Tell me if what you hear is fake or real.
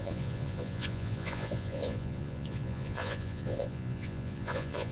fake